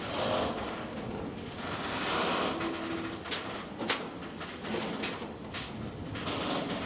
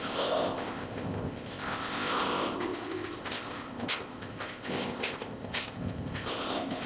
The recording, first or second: first